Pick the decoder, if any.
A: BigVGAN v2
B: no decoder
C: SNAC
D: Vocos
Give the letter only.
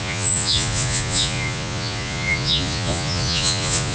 D